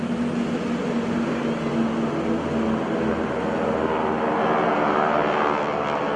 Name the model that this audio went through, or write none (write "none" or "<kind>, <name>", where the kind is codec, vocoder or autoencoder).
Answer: none